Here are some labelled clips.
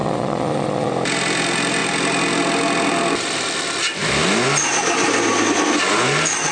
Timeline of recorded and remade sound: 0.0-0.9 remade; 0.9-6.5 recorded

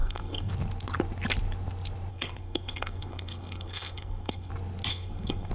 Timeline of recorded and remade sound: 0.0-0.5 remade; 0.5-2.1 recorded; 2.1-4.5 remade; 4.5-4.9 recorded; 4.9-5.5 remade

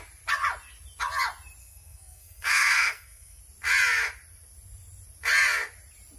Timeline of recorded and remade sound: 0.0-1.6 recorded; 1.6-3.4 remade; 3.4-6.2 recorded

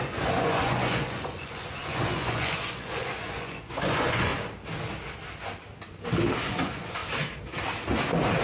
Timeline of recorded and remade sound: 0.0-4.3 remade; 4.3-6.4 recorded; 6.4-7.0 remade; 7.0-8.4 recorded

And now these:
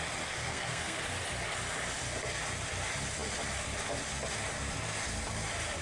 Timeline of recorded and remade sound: 0.0-0.4 recorded; 0.4-1.0 remade; 1.0-5.8 recorded

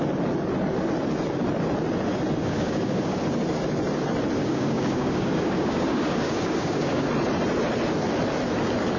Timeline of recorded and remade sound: 0.0-2.4 recorded; 2.4-3.2 remade; 3.2-4.4 recorded; 4.4-7.1 remade; 7.1-9.0 recorded